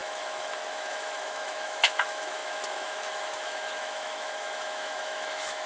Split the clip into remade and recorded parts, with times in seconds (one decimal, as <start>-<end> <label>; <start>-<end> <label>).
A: 0.0-5.7 remade